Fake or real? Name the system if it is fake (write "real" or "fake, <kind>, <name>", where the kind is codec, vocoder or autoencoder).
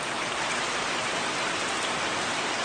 real